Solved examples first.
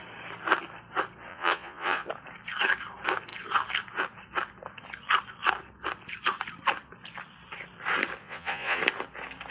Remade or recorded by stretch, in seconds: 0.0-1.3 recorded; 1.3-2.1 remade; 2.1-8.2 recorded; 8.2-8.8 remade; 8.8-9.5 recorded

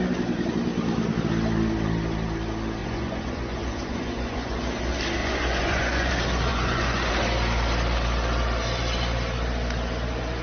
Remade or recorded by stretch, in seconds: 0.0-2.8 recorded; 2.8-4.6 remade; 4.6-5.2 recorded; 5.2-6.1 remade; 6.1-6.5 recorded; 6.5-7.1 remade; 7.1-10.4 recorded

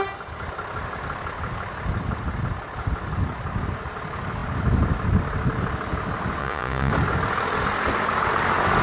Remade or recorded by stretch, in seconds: 0.0-6.4 recorded; 6.4-6.9 remade; 6.9-8.8 recorded

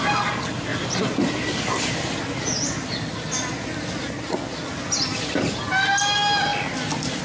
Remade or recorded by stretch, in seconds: 0.0-7.2 recorded

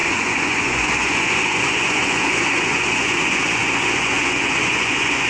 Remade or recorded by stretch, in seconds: 0.0-5.3 remade

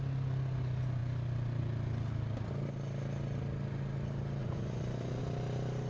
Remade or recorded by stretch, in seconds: 0.0-4.4 recorded; 4.4-5.2 remade; 5.2-5.9 recorded

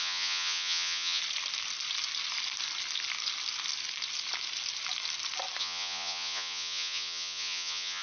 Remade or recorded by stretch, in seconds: 0.0-1.2 remade; 1.2-5.6 recorded; 5.6-8.0 remade

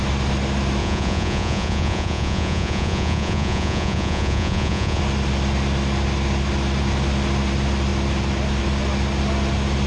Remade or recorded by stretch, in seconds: 0.0-0.8 recorded; 0.8-5.0 remade; 5.0-9.9 recorded